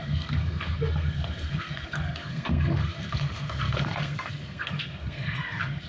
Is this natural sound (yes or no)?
no